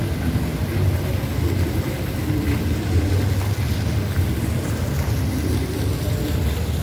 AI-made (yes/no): no